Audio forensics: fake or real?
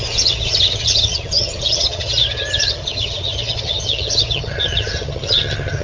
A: fake